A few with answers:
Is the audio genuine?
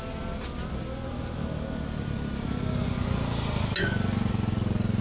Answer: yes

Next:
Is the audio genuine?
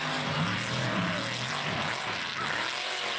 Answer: no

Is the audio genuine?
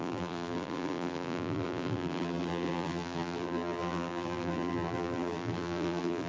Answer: no